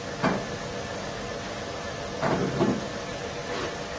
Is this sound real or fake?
real